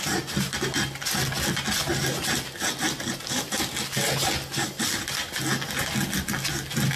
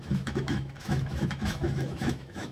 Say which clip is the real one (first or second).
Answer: first